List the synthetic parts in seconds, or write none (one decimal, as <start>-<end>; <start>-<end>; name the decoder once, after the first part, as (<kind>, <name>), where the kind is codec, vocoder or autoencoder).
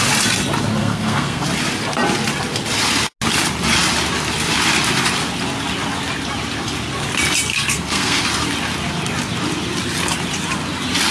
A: 0.8-1.4 (codec, SNAC); 7.5-8.2